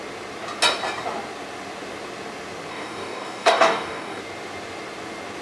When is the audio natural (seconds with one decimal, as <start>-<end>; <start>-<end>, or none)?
0.0-2.7; 4.2-5.4